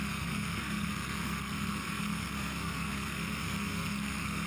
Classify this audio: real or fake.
fake